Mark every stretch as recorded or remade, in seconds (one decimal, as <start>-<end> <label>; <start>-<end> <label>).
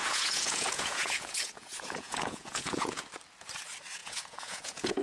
0.0-3.0 remade; 3.0-4.0 recorded; 4.0-5.0 remade